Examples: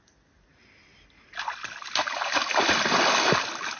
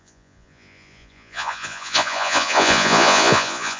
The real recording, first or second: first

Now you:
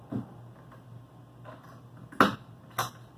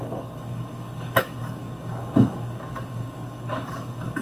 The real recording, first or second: first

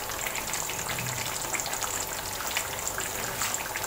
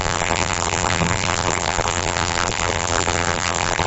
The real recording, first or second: first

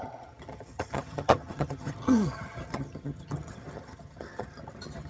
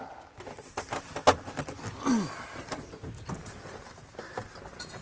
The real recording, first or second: second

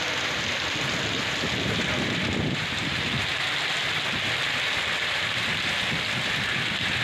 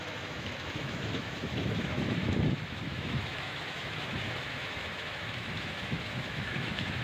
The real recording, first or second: first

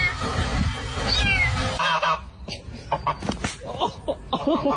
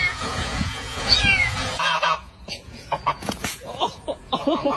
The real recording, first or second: first